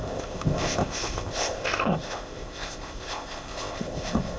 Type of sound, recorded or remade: remade